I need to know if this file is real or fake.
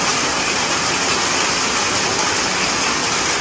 real